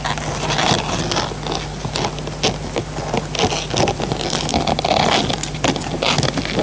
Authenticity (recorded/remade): recorded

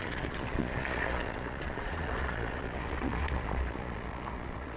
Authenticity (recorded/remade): remade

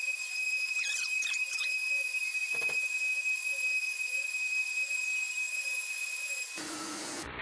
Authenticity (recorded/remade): remade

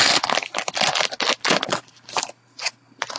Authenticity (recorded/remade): recorded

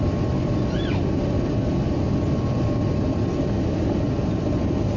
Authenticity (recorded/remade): recorded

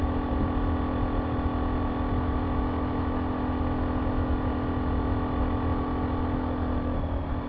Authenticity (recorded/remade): recorded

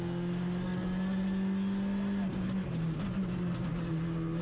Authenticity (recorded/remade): recorded